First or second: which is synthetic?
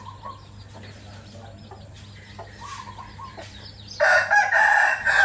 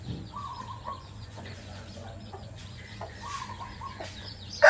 second